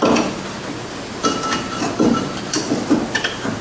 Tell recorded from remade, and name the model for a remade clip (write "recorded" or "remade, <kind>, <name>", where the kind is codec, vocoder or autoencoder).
recorded